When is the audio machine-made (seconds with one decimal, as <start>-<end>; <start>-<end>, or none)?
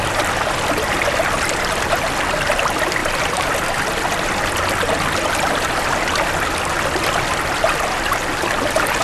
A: 3.0-3.5